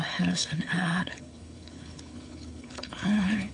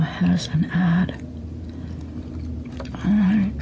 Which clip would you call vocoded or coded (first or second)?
first